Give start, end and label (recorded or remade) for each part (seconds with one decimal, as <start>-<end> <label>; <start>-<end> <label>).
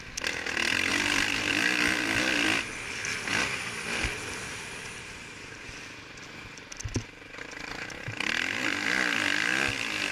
0.0-0.9 recorded; 0.9-1.5 remade; 1.5-10.1 recorded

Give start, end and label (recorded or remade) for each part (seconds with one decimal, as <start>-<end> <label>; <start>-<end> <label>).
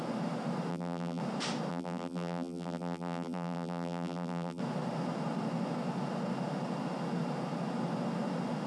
0.0-0.7 recorded; 0.7-1.2 remade; 1.2-1.7 recorded; 1.7-4.6 remade; 4.6-8.7 recorded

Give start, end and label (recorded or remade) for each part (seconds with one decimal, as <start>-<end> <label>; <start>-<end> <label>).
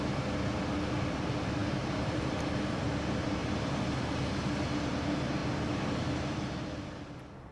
0.0-1.6 recorded; 1.6-2.2 remade; 2.2-3.4 recorded; 3.4-4.0 remade; 4.0-7.5 recorded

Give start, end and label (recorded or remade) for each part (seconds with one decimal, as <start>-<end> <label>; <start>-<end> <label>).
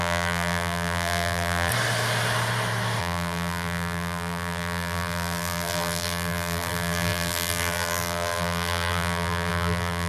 0.0-1.7 remade; 1.7-3.0 recorded; 3.0-10.1 remade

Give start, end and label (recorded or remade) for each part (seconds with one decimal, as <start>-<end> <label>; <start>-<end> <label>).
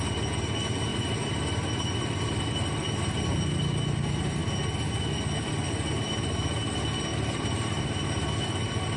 0.0-0.9 recorded; 0.9-2.4 remade; 2.4-7.1 recorded; 7.1-7.8 remade; 7.8-9.0 recorded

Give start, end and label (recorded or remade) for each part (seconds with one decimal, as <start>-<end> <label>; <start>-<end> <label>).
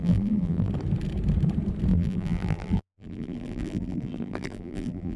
0.0-0.7 remade; 0.7-1.9 recorded; 1.9-5.2 remade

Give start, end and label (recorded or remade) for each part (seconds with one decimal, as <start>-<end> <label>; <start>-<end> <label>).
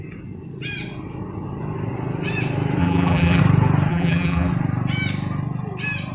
0.0-2.8 recorded; 2.8-3.4 remade; 3.4-3.9 recorded; 3.9-4.5 remade; 4.5-6.1 recorded